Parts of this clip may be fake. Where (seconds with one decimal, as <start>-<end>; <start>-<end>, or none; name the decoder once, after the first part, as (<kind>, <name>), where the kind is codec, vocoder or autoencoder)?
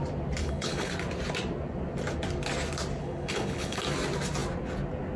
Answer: 0.4-0.9 (codec, HILCodec); 3.0-3.8